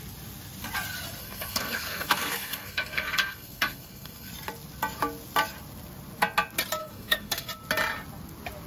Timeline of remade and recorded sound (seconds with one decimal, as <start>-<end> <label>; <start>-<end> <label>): 0.0-1.2 recorded; 1.2-4.3 remade; 4.3-6.8 recorded; 6.8-7.5 remade; 7.5-8.7 recorded